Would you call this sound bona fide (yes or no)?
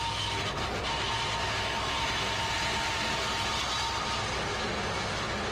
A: yes